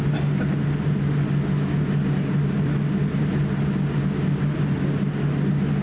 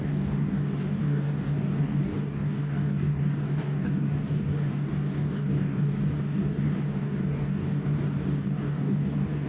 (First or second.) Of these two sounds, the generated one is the second